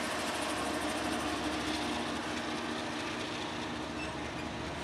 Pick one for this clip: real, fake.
real